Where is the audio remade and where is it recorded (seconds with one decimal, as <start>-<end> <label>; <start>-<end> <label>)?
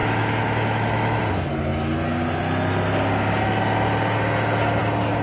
0.0-1.2 remade; 1.2-5.2 recorded